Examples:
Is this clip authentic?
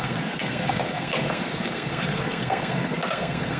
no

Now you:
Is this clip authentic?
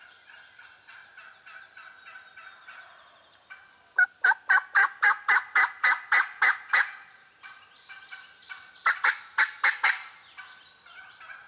yes